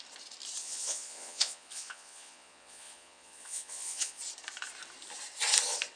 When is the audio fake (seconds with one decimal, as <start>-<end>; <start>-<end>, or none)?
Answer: 0.6-4.2